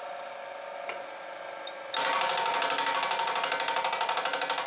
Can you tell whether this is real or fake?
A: real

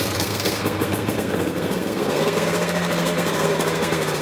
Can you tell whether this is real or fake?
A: fake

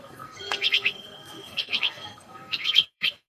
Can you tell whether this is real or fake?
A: fake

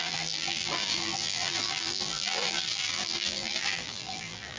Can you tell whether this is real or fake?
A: fake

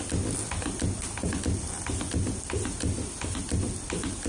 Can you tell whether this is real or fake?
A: real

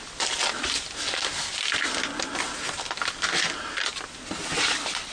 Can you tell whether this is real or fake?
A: real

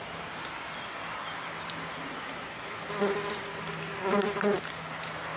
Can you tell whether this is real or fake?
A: real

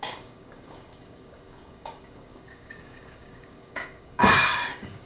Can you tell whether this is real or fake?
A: fake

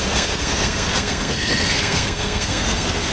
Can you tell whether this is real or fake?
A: fake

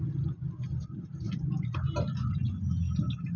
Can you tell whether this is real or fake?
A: real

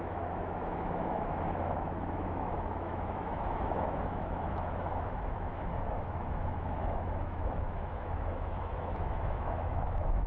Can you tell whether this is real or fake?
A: fake